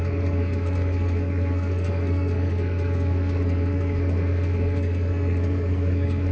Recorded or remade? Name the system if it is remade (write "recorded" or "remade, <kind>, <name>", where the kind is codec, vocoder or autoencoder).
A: remade, codec, SNAC